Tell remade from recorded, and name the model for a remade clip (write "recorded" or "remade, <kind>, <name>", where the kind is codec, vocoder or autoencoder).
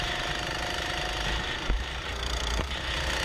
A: remade, vocoder, BigVGAN v2